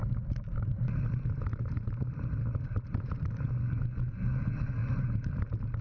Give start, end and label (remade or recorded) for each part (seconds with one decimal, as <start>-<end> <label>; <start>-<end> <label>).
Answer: 0.0-3.5 remade; 3.5-4.8 recorded; 4.8-5.8 remade